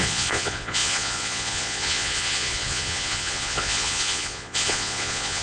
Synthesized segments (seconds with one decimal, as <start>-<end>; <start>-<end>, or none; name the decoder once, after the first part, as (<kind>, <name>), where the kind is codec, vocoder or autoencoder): 0.0-5.4 (vocoder, Vocos)